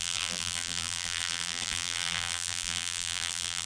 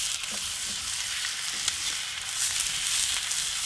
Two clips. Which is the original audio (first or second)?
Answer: second